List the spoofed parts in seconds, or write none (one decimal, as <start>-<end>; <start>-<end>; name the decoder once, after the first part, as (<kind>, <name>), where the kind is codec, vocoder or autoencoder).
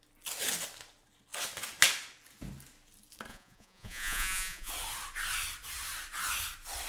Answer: 3.3-4.7 (vocoder, Vocos)